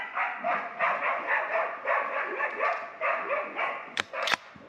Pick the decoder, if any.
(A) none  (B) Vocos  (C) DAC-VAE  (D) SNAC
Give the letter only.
B